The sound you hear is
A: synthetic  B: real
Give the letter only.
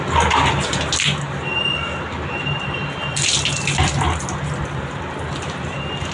B